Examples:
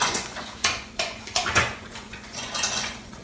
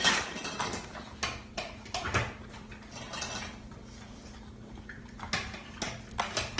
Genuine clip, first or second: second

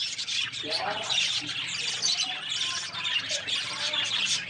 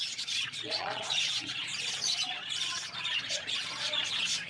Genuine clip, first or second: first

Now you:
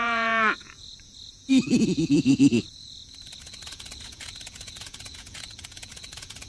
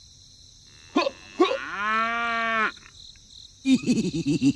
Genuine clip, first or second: second